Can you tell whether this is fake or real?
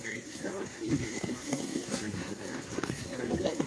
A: fake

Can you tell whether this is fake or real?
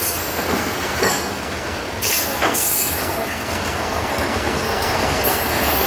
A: fake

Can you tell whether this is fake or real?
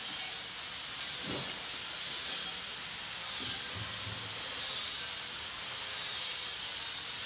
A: real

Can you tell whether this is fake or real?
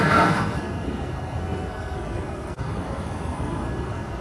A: fake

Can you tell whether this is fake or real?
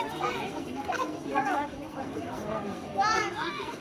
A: fake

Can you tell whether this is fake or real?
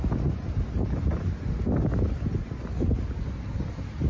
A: real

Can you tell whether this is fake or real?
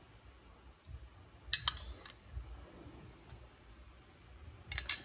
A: real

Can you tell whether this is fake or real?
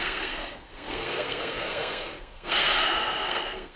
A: fake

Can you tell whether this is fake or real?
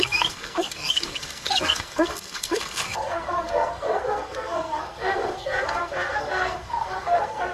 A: fake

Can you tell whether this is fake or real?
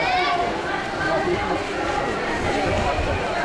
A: real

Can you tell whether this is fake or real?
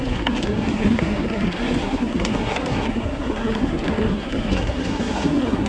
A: fake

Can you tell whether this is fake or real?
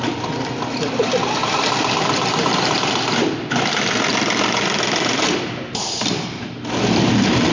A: real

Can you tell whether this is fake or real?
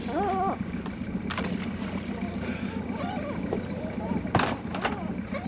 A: real